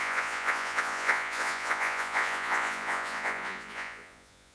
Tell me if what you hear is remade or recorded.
remade